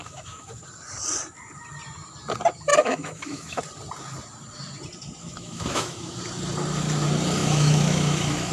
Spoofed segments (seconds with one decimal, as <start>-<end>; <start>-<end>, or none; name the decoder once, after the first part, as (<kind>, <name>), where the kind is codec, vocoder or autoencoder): 0.0-0.6 (autoencoder, DAC-VAE); 2.7-3.6; 5.2-6.2; 7.4-8.5